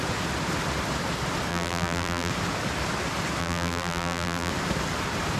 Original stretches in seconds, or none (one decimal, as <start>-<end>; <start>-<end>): 0.0-1.5; 2.3-3.4; 4.5-5.4